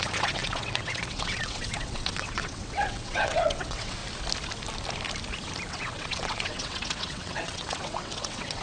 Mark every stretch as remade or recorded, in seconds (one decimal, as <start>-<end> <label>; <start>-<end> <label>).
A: 0.0-4.0 remade; 4.0-5.7 recorded; 5.7-8.6 remade